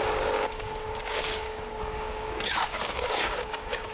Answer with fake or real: fake